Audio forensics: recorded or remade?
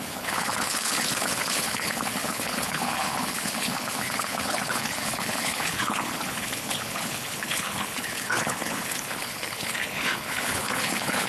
remade